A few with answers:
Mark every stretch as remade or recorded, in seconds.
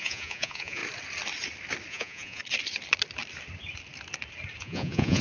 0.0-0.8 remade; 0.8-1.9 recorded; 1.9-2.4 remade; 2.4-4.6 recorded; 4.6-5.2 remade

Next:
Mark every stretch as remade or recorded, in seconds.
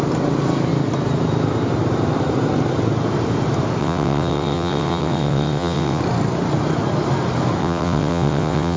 0.0-3.8 recorded; 3.8-6.0 remade; 6.0-7.6 recorded; 7.6-8.8 remade